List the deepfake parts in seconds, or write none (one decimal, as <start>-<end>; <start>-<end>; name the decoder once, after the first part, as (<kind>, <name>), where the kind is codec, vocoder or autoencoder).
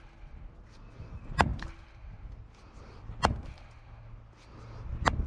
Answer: none